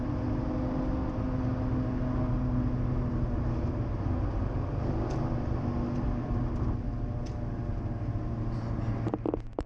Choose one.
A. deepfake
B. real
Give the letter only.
B